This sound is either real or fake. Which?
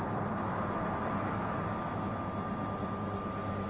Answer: real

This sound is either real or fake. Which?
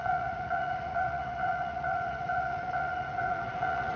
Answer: fake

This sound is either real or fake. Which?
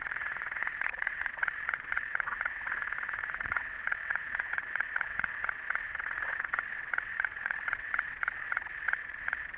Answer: fake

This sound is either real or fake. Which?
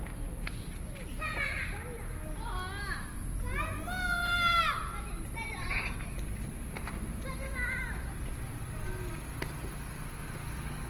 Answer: real